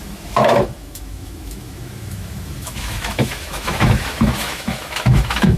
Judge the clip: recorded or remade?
remade